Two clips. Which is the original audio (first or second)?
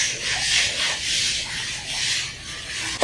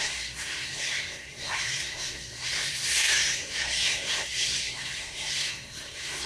first